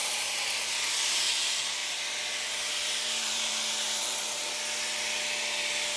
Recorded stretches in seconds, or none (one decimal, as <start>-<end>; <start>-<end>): 0.7-1.8; 4.6-6.0